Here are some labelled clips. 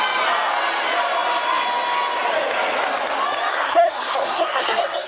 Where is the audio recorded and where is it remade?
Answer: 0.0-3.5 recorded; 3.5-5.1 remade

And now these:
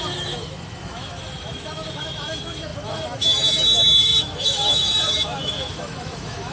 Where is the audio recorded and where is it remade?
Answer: 0.0-6.5 remade

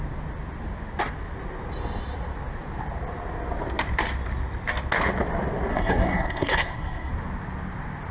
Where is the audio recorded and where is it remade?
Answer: 0.0-5.7 recorded; 5.7-7.1 remade; 7.1-8.1 recorded